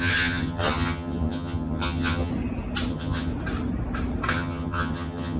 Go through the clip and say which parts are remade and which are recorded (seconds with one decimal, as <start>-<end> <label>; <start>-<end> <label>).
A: 0.0-2.3 remade; 2.3-2.9 recorded; 2.9-3.3 remade; 3.3-4.3 recorded; 4.3-5.4 remade